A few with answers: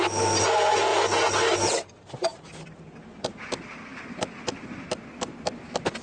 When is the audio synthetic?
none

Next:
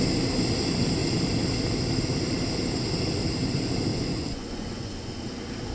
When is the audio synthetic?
3.9-5.2

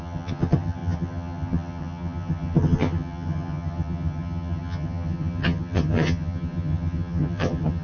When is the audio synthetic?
0.0-7.8